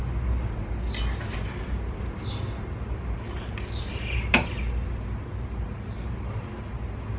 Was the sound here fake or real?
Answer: real